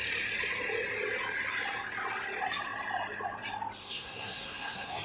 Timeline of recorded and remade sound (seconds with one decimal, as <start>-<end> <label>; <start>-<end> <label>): 0.0-3.8 recorded; 3.8-5.0 remade

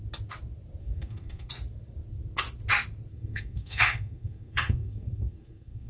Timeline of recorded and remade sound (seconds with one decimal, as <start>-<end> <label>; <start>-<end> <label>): 0.0-0.8 recorded; 0.8-1.5 remade; 1.5-3.1 recorded; 3.1-5.9 remade

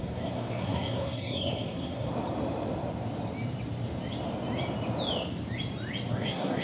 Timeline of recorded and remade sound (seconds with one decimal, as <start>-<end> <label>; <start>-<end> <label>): 0.0-2.1 remade; 2.1-6.1 recorded; 6.1-6.6 remade

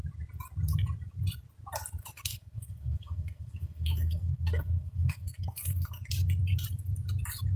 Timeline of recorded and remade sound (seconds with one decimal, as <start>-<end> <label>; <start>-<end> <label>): 0.0-2.0 recorded; 2.0-6.1 remade; 6.1-7.6 recorded

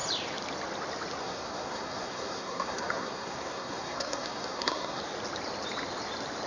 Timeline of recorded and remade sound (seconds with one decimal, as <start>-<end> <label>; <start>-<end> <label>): 0.0-1.2 recorded; 1.2-5.0 remade; 5.0-6.5 recorded

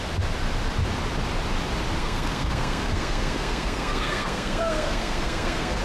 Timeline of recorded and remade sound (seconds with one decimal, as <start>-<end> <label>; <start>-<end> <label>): 0.0-2.0 recorded; 2.0-5.8 remade

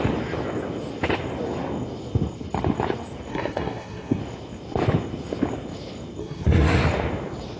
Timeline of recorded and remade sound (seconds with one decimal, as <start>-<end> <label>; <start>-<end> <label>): 0.0-3.3 recorded; 3.3-4.2 remade; 4.2-6.2 recorded; 6.2-6.8 remade; 6.8-7.6 recorded